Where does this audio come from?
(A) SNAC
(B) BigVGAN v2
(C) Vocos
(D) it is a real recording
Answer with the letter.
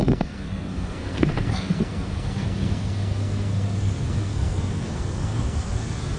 A